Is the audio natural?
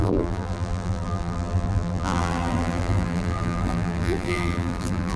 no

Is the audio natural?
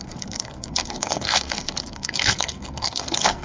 no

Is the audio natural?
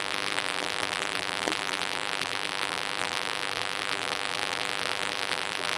no